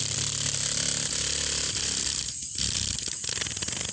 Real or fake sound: real